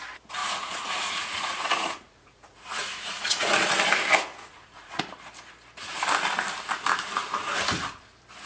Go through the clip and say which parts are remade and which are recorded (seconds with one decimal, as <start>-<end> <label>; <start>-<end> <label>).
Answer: 0.0-0.4 recorded; 0.4-3.7 remade; 3.7-4.3 recorded; 4.3-5.0 remade; 5.0-8.5 recorded